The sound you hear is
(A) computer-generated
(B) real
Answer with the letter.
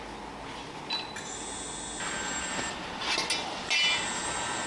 B